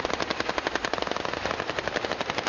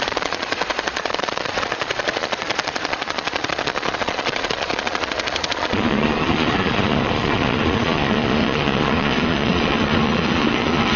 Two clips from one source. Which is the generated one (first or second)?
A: second